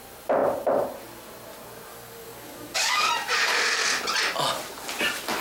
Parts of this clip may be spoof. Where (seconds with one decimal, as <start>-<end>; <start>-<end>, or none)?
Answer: 1.9-3.1